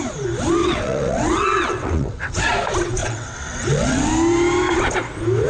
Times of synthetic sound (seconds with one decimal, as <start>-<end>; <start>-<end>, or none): 0.6-2.4; 3.0-4.1